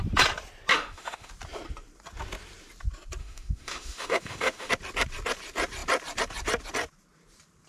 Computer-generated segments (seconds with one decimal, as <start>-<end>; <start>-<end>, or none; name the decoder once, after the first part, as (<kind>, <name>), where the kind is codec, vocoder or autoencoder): 0.7-1.3 (autoencoder, DAC-VAE); 3.2-4.7